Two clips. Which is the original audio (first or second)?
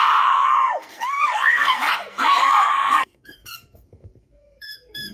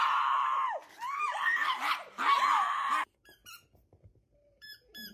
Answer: second